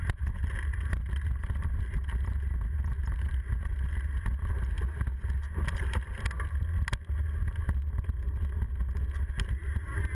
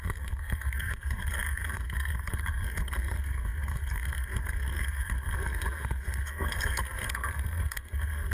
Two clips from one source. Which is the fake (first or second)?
second